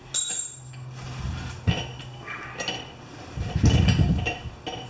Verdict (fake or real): real